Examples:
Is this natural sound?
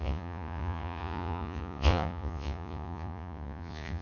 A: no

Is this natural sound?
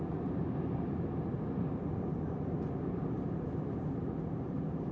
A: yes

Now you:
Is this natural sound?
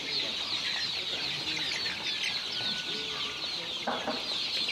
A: yes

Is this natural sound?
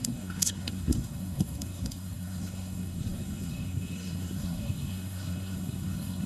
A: no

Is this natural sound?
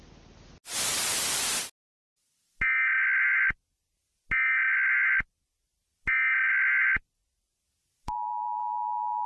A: yes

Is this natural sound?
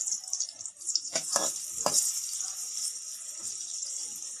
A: no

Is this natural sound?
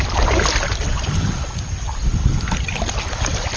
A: yes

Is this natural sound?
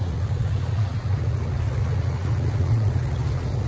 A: no